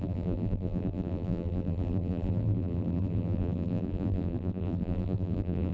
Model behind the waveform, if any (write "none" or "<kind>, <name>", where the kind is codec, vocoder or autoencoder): vocoder, BigVGAN v2